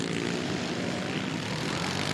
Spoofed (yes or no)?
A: yes